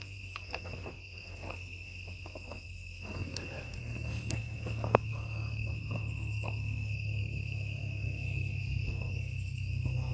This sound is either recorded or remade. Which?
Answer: remade